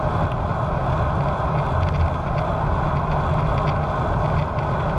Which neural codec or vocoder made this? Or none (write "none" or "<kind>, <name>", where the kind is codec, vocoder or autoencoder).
none